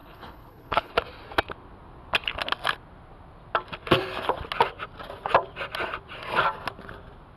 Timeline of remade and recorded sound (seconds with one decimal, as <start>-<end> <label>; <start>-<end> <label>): 0.0-0.9 remade; 0.9-7.4 recorded